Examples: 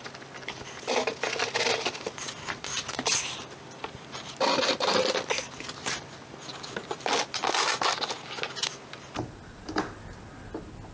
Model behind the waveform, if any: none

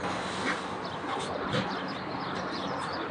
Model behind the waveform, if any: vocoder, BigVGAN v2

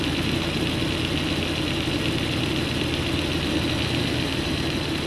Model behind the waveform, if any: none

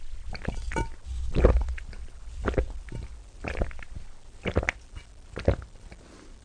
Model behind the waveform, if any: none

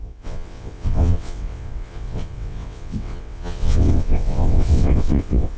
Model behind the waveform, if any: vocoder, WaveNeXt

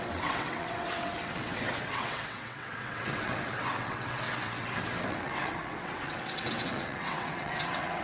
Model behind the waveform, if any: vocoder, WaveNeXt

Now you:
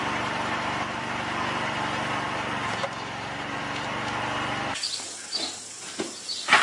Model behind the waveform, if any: vocoder, BigVGAN v2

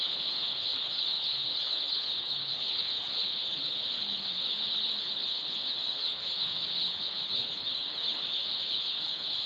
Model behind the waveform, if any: codec, HILCodec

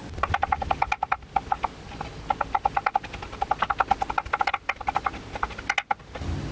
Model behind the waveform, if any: none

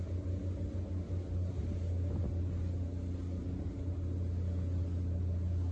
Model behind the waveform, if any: none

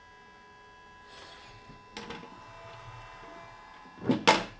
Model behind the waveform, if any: none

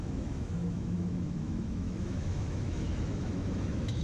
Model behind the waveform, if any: autoencoder, DAC-VAE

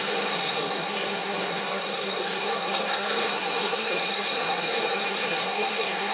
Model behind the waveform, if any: codec, SNAC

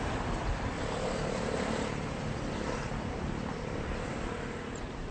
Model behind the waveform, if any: vocoder, BigVGAN v2